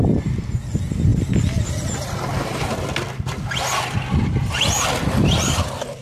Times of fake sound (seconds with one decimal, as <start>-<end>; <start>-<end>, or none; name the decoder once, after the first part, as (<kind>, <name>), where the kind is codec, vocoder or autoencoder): none